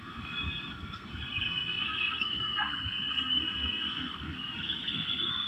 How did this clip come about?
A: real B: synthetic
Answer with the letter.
B